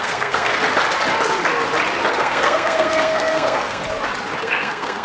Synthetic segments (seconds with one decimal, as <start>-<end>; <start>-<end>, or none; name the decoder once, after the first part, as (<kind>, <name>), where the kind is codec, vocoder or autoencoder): 0.0-0.6 (codec, SNAC); 2.1-3.8; 4.4-5.0